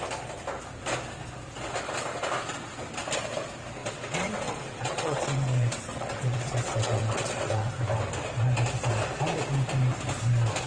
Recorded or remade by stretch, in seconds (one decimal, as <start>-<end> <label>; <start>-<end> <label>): 0.0-3.8 recorded; 3.8-7.7 remade; 7.7-10.7 recorded